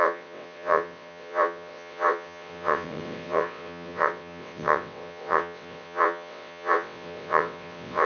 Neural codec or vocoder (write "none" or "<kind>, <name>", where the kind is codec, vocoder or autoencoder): vocoder, WaveNeXt